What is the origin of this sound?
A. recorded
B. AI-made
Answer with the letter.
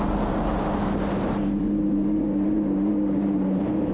B